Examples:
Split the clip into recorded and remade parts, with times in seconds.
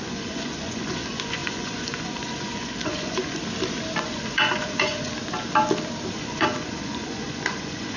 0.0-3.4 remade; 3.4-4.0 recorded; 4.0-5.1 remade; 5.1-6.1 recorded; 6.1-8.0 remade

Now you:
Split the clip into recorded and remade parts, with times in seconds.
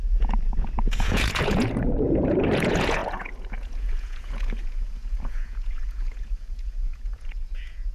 0.0-7.9 remade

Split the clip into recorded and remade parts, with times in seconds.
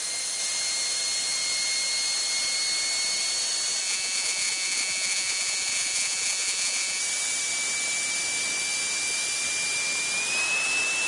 0.0-3.8 recorded; 3.8-7.0 remade; 7.0-11.1 recorded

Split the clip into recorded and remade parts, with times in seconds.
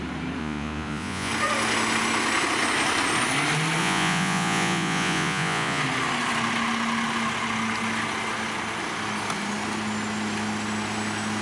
0.0-0.4 recorded; 0.4-1.3 remade; 1.3-3.8 recorded; 3.8-5.8 remade; 5.8-11.4 recorded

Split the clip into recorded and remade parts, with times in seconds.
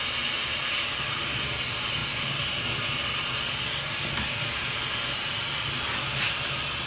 0.0-6.9 recorded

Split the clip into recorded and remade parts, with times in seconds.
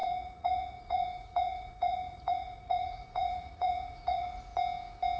0.0-4.5 remade; 4.5-5.2 recorded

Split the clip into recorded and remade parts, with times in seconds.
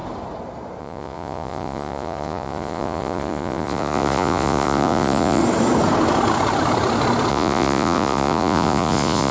0.0-0.8 recorded; 0.8-5.4 remade; 5.4-7.3 recorded; 7.3-9.3 remade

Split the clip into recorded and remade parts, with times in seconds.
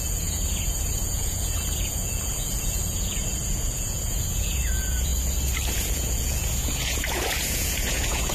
0.0-5.1 remade; 5.1-5.7 recorded; 5.7-8.3 remade